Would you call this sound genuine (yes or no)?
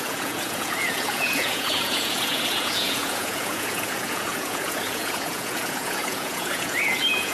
no